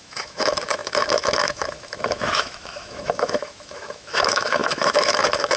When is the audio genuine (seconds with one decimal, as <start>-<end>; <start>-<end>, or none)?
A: none